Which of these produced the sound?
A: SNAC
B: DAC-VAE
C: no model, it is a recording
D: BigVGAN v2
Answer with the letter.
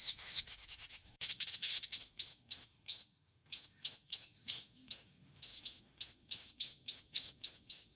B